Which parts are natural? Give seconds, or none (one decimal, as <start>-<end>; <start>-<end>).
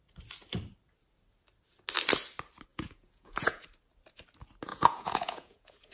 0.0-2.7; 3.6-4.7